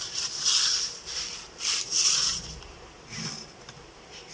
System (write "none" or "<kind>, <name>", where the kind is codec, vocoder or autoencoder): none